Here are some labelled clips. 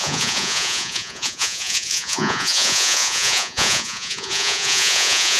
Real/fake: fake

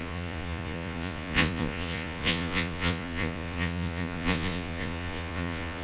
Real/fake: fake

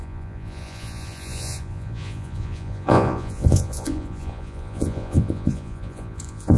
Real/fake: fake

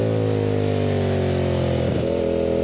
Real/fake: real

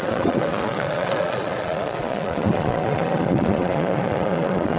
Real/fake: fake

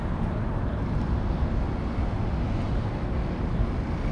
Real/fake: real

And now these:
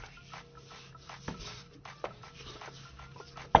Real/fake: real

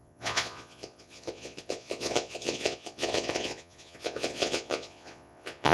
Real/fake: fake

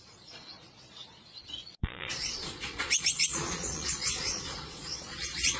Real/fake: fake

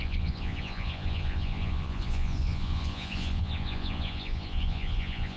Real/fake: fake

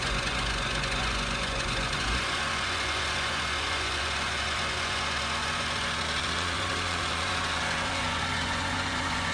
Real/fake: fake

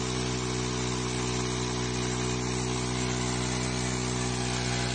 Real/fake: real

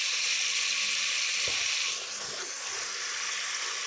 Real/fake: real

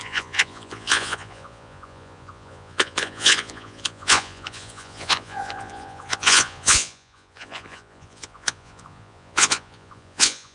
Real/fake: fake